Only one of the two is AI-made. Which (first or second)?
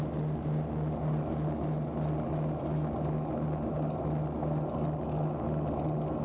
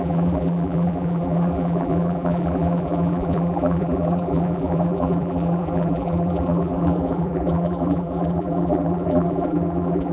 second